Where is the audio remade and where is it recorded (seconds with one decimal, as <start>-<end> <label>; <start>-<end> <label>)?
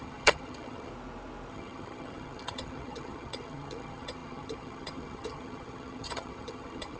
0.0-0.9 remade; 0.9-1.5 recorded; 1.5-7.0 remade